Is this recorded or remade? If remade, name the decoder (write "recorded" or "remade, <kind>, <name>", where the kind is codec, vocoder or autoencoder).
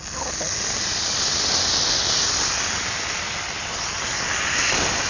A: recorded